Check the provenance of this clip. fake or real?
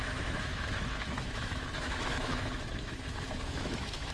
fake